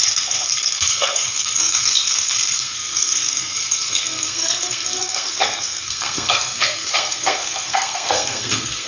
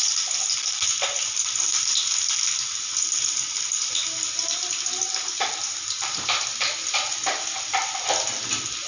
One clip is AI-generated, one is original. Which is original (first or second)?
second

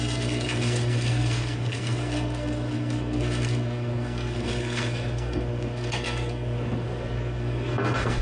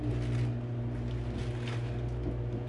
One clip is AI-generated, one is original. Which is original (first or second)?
second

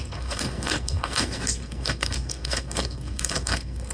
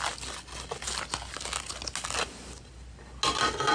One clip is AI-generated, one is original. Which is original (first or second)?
second